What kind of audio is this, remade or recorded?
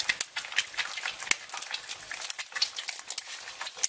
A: recorded